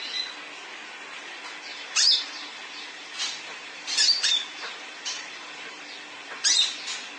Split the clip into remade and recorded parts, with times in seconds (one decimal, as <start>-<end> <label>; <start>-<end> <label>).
0.0-1.7 recorded; 1.7-5.9 remade; 5.9-7.2 recorded